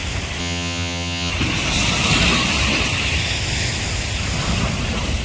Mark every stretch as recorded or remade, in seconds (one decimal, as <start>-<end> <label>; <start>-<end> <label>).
0.0-0.4 recorded; 0.4-1.3 remade; 1.3-5.2 recorded